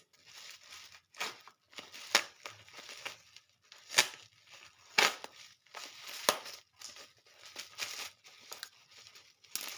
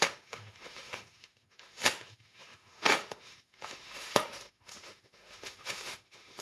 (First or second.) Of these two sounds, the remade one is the second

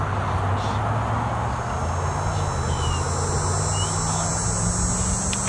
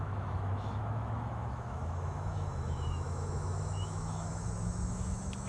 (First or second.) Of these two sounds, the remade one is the second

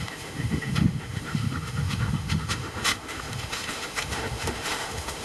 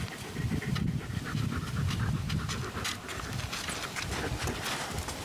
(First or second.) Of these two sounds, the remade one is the first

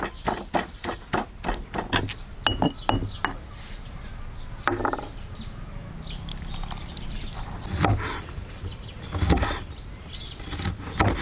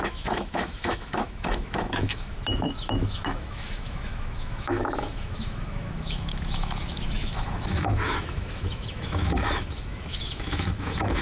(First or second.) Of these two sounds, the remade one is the second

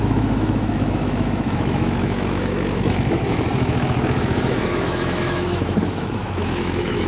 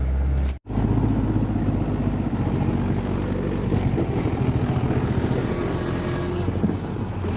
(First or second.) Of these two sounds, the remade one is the first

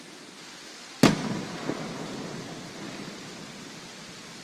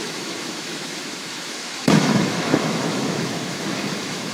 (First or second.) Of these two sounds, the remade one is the second